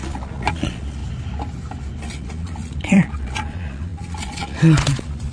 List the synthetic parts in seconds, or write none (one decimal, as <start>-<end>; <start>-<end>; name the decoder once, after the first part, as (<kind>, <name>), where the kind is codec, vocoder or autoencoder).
0.0-1.0 (vocoder, Vocos); 2.0-5.3